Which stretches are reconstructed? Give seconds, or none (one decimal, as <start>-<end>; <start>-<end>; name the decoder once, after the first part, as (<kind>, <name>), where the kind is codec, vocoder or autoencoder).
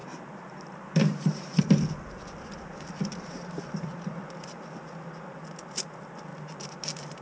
0.0-1.6 (vocoder, BigVGAN v2); 6.3-7.2